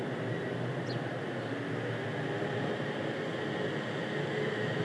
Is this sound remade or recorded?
recorded